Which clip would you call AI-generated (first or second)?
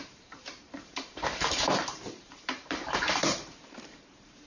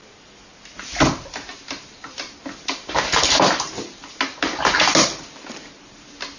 first